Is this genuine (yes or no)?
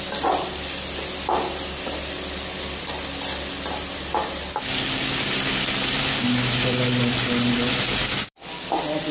no